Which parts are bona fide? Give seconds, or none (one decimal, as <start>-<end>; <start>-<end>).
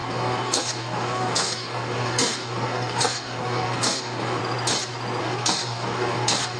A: 4.4-5.2